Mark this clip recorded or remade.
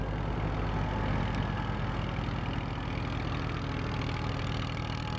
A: recorded